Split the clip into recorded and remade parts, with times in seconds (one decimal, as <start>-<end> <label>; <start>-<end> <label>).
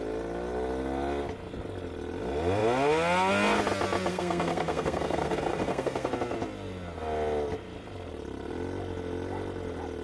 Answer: 0.0-4.1 recorded; 4.1-6.1 remade; 6.1-10.0 recorded